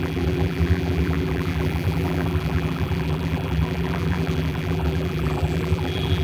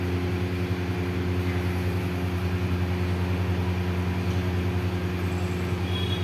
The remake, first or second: first